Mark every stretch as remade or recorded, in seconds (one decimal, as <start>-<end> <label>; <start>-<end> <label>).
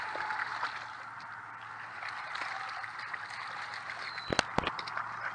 0.0-5.3 recorded